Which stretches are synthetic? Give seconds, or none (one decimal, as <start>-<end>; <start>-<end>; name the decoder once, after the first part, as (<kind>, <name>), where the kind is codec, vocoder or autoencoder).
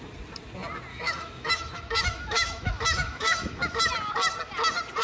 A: 0.9-3.9 (autoencoder, DAC-VAE)